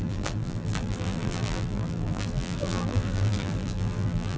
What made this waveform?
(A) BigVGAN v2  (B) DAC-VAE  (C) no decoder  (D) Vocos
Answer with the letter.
A